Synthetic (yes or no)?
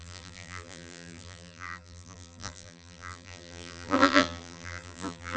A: yes